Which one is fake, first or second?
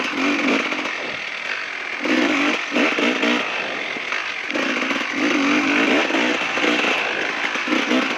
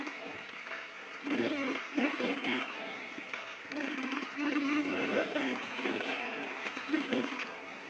second